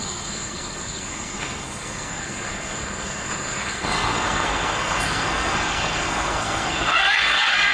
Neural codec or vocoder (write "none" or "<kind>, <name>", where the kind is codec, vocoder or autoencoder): codec, SNAC